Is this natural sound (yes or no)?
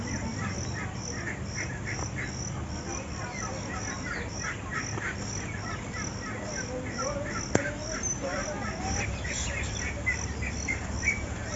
yes